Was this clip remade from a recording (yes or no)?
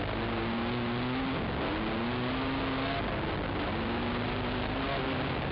no